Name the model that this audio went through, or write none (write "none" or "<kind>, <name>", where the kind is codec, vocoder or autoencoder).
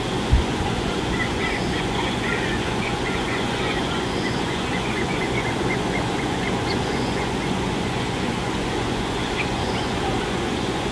vocoder, Vocos